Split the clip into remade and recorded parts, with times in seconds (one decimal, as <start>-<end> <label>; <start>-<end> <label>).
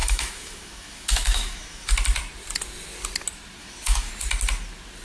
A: 0.0-1.9 remade; 1.9-3.6 recorded; 3.6-4.1 remade; 4.1-5.0 recorded